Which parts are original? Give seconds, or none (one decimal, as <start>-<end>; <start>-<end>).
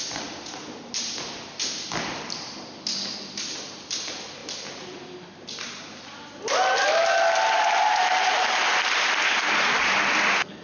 0.0-10.6